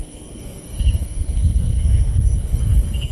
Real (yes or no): no